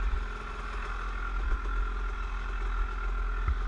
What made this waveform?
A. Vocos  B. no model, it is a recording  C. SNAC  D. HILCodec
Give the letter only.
B